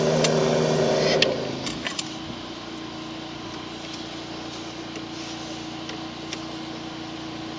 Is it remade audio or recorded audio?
recorded